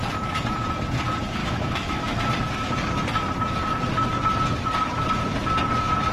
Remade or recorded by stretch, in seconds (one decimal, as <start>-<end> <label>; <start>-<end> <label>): 0.0-1.4 recorded; 1.4-2.2 remade; 2.2-6.1 recorded

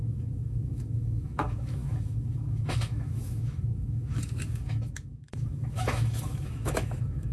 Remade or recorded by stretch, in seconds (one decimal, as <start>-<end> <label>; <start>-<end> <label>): 0.0-7.3 remade

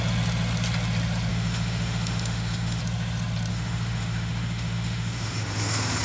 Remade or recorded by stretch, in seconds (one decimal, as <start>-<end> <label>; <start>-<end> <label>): 0.0-1.3 recorded; 1.3-2.8 remade; 2.8-3.5 recorded; 3.5-6.0 remade

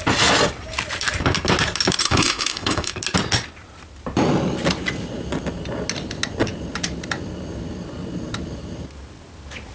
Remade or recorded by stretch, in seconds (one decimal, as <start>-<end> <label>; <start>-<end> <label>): 0.0-2.0 recorded; 2.0-2.9 remade; 2.9-9.7 recorded